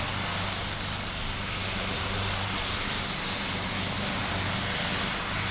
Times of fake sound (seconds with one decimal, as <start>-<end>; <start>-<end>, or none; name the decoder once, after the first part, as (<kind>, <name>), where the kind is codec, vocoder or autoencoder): 1.6-3.0 (vocoder, BigVGAN v2)